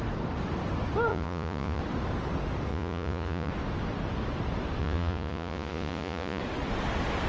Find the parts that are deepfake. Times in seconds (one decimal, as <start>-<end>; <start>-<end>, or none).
1.1-1.8; 2.7-3.5; 4.8-6.4